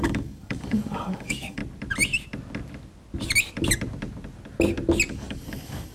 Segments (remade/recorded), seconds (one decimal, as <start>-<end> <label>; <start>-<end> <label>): 0.0-1.6 remade; 1.6-5.1 recorded; 5.1-5.9 remade